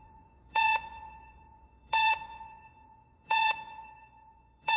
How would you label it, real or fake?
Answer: fake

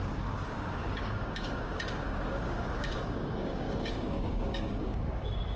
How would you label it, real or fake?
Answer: fake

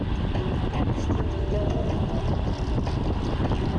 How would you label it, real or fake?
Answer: real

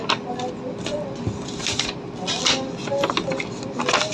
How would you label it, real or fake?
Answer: real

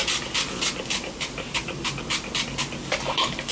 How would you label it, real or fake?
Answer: real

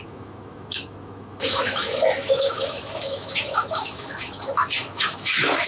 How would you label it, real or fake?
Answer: fake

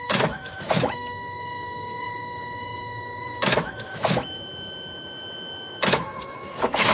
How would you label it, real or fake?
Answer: fake